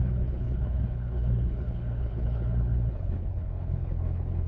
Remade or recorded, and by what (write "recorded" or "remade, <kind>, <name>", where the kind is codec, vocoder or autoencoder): remade, codec, HILCodec